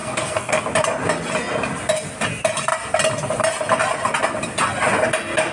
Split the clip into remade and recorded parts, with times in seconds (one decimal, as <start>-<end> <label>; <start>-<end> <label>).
0.0-0.6 remade; 0.6-5.5 recorded